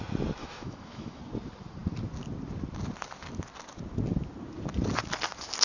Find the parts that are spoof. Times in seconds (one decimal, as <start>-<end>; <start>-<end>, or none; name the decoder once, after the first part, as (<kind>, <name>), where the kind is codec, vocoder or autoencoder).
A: 0.4-1.2 (autoencoder, DAC-VAE)